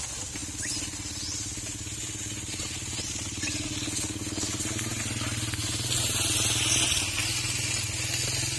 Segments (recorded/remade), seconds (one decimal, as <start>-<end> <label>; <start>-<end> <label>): 0.0-8.6 recorded